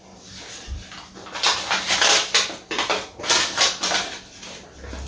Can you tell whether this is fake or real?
real